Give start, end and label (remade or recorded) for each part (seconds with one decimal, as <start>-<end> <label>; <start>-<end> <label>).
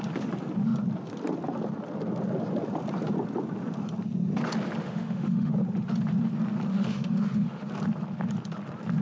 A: 0.0-4.8 recorded; 4.8-5.5 remade; 5.5-6.7 recorded; 6.7-7.7 remade; 7.7-9.0 recorded